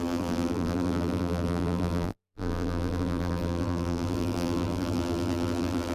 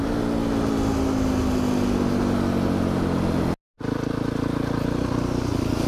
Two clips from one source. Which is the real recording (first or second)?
second